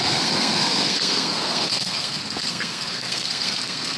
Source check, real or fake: fake